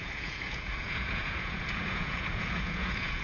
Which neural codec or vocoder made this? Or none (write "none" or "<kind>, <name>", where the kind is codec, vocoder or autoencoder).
vocoder, Vocos